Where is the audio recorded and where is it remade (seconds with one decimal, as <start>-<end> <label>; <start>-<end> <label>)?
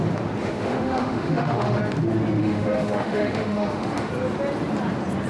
0.0-0.4 recorded; 0.4-1.8 remade; 1.8-2.4 recorded; 2.4-4.1 remade; 4.1-5.3 recorded